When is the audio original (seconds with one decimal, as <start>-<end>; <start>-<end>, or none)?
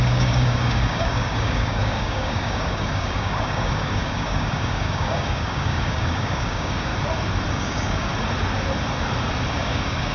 6.9-7.5; 8.1-9.5